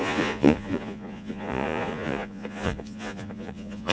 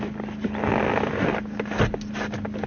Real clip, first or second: second